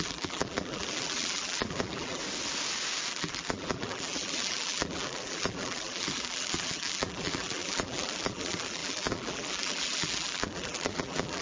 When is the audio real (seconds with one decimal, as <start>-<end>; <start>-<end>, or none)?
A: 2.2-3.1

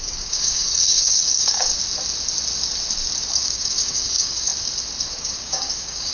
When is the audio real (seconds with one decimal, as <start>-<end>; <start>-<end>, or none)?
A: 1.7-3.3; 4.5-5.2

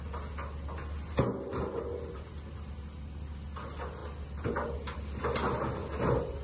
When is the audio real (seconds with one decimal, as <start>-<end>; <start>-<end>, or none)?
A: 0.0-1.5; 2.3-6.4

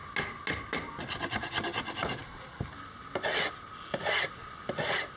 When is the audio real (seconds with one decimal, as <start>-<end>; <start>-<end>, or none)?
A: 0.0-5.2

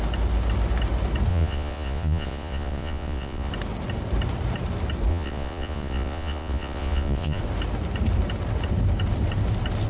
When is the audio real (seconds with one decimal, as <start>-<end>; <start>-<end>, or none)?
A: 0.0-1.3; 3.5-5.1; 7.4-9.9

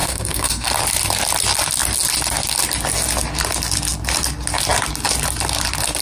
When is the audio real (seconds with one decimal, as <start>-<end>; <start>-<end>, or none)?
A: 0.7-6.0

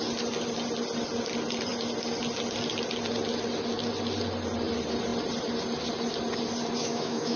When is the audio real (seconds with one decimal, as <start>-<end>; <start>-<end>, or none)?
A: 0.0-6.8

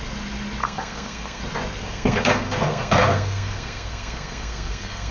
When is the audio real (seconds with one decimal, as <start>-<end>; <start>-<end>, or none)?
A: 0.0-0.6; 1.4-1.8